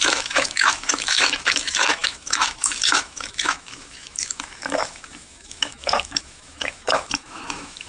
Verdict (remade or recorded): remade